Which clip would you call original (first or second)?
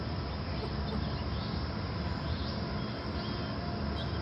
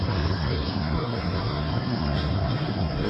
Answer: first